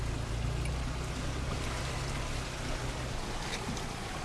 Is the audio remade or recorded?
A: recorded